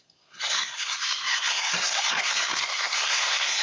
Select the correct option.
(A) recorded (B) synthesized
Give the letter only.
B